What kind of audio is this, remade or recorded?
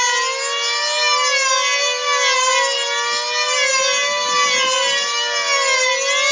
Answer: recorded